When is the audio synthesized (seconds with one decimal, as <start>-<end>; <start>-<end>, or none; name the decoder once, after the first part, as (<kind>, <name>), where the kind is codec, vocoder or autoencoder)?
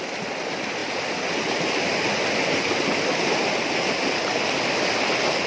none